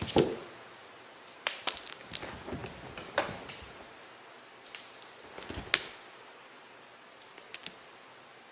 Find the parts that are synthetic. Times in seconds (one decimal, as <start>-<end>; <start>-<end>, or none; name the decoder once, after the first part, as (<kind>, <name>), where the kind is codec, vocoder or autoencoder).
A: none